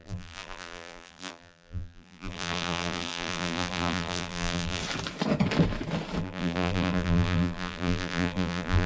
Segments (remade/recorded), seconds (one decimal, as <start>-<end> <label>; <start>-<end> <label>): 0.0-4.8 remade; 4.8-6.2 recorded; 6.2-8.9 remade